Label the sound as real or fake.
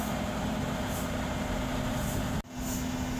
real